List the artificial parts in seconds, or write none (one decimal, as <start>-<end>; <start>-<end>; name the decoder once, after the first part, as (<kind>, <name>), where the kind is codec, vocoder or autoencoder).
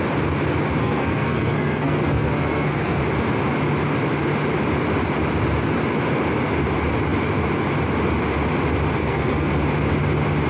0.8-3.0 (codec, SNAC); 9.0-9.5